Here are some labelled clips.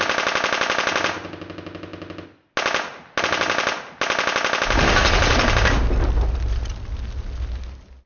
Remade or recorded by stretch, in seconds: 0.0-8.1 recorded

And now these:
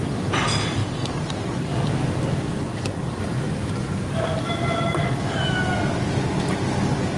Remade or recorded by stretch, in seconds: 0.0-0.8 remade; 0.8-3.1 recorded; 3.1-3.6 remade; 3.6-7.2 recorded